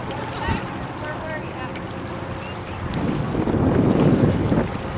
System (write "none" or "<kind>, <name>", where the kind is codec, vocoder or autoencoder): none